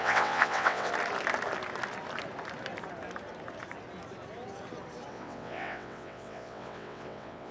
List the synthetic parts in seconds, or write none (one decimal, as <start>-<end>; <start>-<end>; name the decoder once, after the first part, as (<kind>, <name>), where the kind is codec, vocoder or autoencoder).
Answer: 0.0-0.9 (vocoder, WaveNeXt); 5.1-7.5